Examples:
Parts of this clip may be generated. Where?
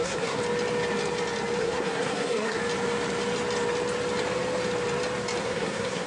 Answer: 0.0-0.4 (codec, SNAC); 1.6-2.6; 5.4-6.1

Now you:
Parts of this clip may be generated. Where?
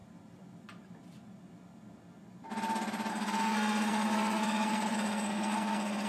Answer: 3.1-6.1 (codec, SNAC)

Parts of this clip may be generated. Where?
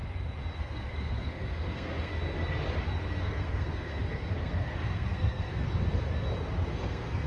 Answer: 0.6-2.1 (codec, SNAC); 3.2-5.5; 6.7-7.3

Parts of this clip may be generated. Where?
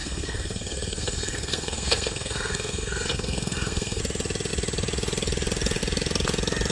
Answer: 0.0-4.0 (codec, SNAC)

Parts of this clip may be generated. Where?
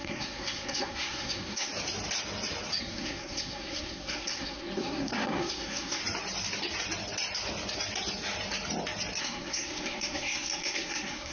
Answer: 0.0-1.7 (codec, SNAC); 2.8-6.0; 9.2-11.3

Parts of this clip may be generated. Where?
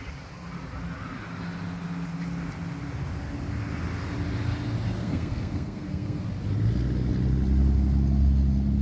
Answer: 5.0-6.2 (codec, SNAC)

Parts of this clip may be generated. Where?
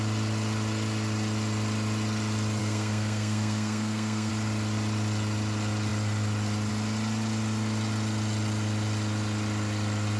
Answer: 2.6-4.3 (codec, SNAC)